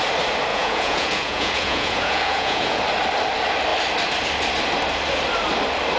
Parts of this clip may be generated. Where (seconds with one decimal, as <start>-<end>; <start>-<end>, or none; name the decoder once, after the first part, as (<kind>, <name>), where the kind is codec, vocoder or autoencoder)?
0.5-2.8 (vocoder, Vocos)